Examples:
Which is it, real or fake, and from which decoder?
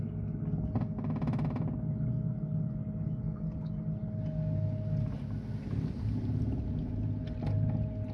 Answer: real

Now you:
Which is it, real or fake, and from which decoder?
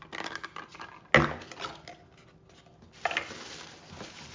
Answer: real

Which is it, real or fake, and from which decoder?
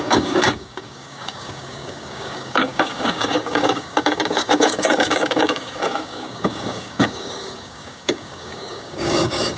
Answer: fake, codec, DAC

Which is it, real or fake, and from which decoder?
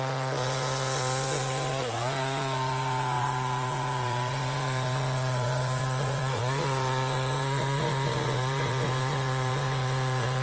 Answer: fake, vocoder, Vocos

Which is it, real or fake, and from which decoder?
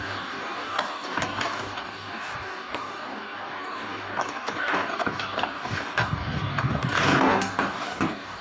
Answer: fake, codec, DAC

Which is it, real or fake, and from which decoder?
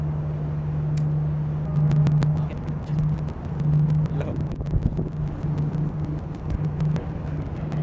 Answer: real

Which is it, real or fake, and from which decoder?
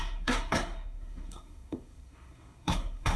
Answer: fake, codec, SNAC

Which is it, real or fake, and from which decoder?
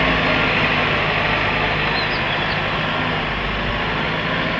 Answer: real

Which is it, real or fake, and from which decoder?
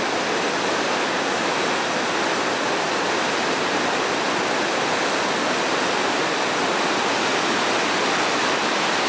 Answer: real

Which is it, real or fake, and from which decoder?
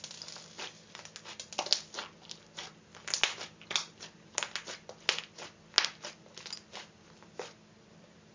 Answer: real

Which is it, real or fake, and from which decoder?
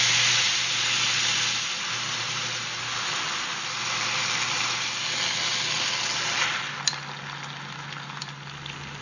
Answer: real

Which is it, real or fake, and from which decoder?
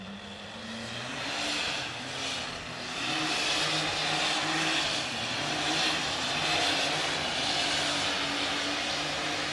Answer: real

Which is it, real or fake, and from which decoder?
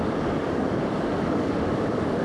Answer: fake, codec, DAC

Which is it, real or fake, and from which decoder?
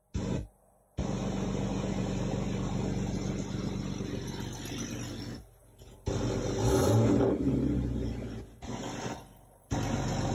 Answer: real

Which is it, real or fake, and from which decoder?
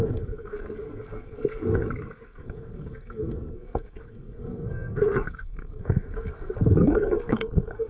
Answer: fake, codec, SNAC